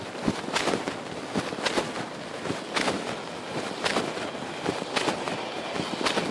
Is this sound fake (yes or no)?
no